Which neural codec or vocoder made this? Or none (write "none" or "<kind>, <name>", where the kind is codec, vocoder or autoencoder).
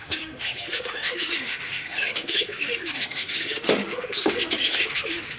autoencoder, DAC-VAE